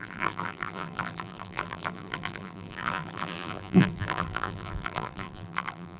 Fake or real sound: fake